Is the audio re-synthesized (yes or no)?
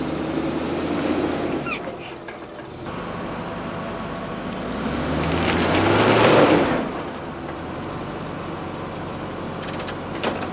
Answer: no